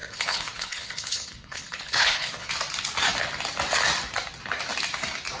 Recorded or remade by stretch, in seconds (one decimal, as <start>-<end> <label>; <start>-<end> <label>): 0.0-2.5 remade; 2.5-5.4 recorded